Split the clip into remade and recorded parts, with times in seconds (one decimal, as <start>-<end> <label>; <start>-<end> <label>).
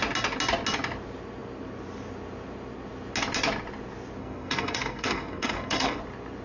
0.0-4.2 recorded; 4.2-6.0 remade; 6.0-6.4 recorded